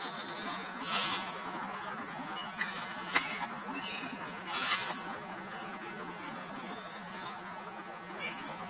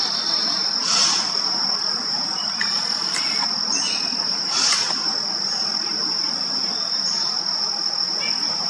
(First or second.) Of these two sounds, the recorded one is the second